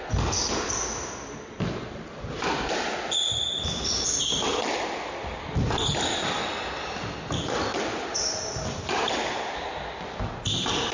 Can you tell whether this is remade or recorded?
recorded